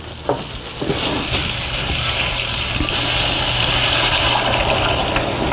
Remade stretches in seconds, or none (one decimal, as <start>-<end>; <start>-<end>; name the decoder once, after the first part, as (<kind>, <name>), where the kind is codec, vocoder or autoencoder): none